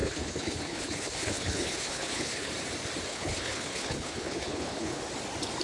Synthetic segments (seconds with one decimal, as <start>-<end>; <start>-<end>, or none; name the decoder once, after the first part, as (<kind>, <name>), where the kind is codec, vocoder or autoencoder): 0.0-2.5 (codec, HILCodec); 3.1-5.0